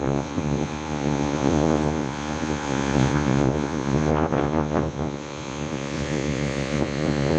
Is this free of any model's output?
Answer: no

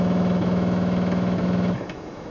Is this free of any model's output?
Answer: no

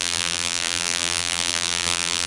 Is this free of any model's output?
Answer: no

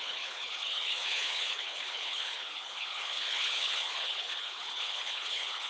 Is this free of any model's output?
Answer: no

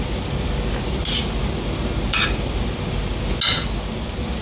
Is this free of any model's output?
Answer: yes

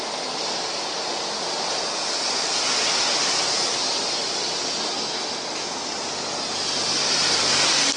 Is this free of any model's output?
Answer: yes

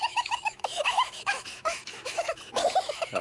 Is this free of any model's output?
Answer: no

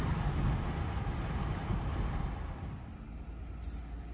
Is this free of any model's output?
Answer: yes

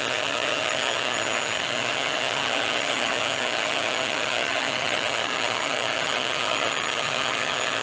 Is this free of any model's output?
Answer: no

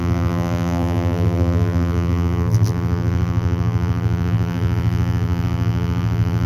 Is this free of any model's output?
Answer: no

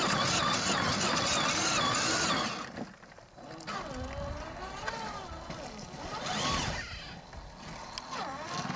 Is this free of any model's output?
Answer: yes